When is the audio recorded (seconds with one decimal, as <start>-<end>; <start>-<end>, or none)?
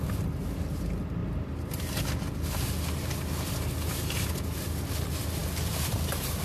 0.0-6.4